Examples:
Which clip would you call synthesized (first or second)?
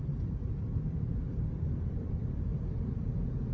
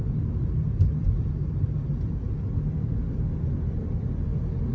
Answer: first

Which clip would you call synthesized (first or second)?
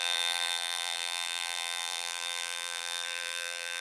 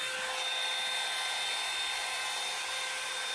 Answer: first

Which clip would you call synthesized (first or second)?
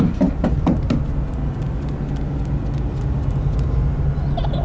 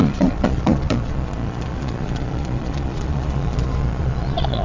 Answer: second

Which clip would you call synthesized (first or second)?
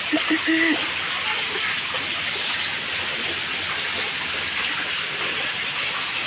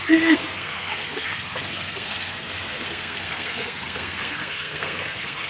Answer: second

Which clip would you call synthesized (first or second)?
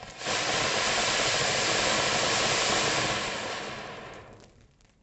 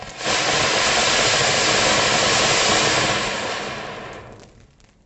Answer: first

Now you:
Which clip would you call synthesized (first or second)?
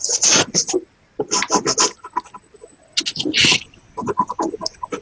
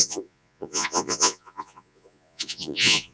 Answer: second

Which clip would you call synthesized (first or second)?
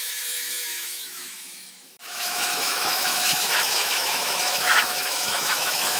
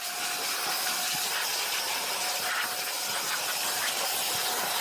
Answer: first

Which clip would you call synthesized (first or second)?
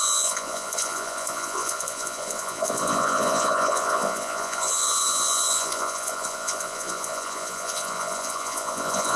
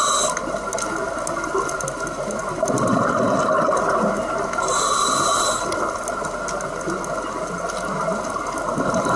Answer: first